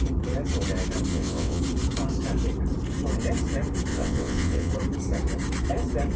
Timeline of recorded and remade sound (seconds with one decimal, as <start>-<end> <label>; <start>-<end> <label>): 0.0-1.1 recorded; 1.1-1.6 remade; 1.6-3.9 recorded; 3.9-4.7 remade; 4.7-6.2 recorded